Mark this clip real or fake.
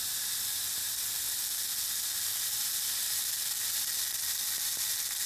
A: real